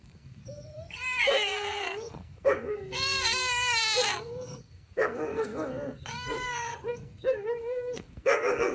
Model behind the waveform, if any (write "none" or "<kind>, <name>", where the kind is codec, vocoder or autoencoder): codec, SNAC